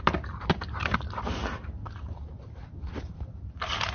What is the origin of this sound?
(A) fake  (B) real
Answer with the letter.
A